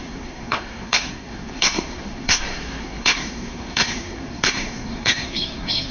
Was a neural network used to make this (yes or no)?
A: yes